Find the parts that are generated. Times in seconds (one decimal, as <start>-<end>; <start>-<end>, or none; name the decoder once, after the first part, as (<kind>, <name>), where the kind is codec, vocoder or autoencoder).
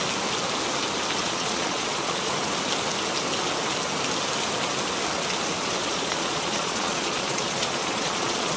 1.2-2.3 (vocoder, Vocos); 5.8-8.6